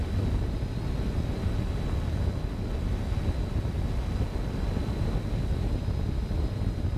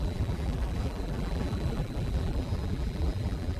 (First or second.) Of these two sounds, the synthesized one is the second